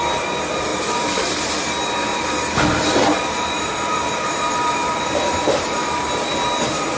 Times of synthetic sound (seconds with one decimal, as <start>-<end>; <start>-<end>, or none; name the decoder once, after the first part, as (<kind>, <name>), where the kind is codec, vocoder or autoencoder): 0.7-1.4 (vocoder, BigVGAN v2); 2.1-6.1